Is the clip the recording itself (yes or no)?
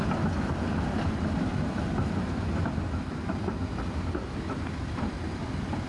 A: yes